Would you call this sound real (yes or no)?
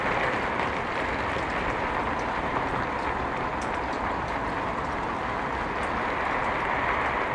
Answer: yes